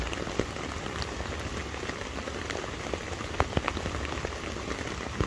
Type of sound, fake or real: real